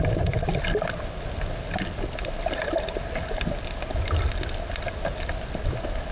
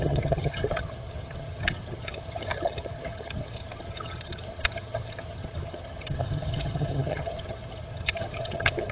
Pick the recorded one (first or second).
first